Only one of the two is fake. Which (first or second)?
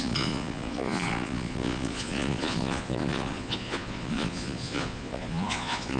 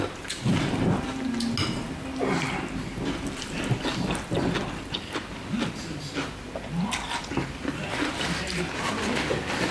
first